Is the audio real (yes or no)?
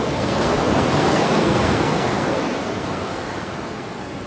no